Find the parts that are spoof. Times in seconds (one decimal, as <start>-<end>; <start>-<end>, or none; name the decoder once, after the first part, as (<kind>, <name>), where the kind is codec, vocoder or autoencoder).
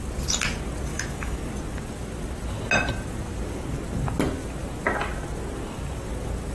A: 0.9-1.4 (autoencoder, DAC-VAE)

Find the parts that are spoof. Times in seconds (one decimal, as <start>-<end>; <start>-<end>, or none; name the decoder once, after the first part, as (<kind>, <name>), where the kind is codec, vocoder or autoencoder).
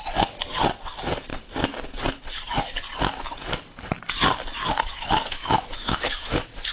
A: 4.6-6.7 (autoencoder, DAC-VAE)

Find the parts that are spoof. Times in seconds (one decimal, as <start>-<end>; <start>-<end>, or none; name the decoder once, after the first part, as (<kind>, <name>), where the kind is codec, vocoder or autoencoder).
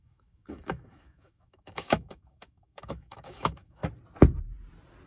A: 0.0-3.8 (autoencoder, DAC-VAE)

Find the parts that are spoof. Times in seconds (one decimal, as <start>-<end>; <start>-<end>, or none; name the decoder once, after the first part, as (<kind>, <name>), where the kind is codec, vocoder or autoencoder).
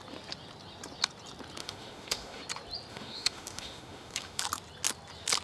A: 1.6-2.4 (autoencoder, DAC-VAE); 2.9-4.4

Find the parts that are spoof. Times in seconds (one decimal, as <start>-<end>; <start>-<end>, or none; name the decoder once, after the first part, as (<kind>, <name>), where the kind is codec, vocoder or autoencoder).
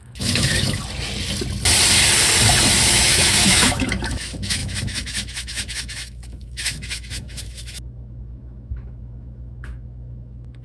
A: 0.0-0.8 (autoencoder, DAC-VAE); 2.9-10.6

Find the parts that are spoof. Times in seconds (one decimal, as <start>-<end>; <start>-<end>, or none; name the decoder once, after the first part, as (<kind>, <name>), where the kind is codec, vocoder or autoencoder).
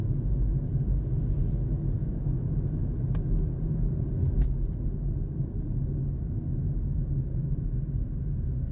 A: 2.0-3.0 (autoencoder, DAC-VAE)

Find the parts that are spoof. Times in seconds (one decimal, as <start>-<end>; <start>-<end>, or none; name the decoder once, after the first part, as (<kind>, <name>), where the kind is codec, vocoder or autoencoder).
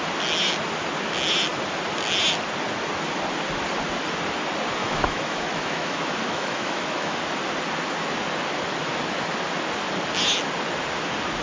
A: 4.8-7.2 (autoencoder, DAC-VAE)